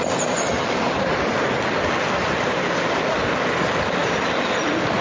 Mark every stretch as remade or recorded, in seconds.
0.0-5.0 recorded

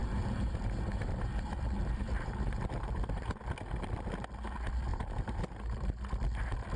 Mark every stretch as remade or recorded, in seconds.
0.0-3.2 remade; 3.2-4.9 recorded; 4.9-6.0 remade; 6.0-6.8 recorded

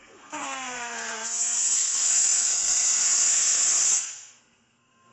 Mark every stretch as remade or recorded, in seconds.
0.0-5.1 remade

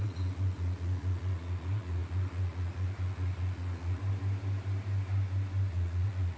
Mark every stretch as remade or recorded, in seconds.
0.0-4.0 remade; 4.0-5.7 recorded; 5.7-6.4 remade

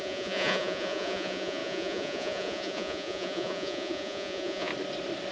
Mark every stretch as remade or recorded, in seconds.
0.0-4.7 remade; 4.7-5.3 recorded